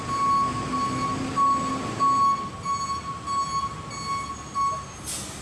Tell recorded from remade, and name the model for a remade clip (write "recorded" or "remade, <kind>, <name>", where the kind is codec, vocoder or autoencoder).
recorded